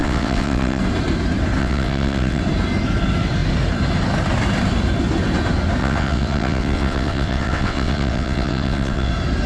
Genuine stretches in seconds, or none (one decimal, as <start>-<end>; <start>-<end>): 0.8-1.6; 2.4-5.8; 9.1-9.5